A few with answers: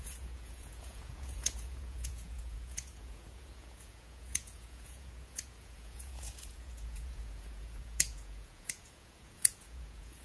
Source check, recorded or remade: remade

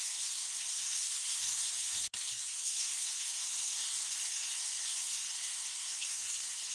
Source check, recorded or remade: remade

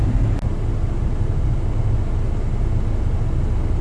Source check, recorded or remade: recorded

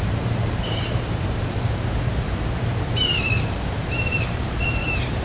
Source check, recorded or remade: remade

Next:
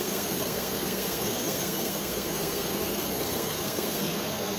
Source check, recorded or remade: remade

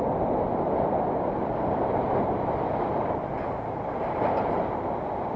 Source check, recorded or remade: recorded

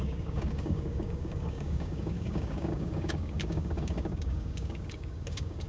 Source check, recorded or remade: remade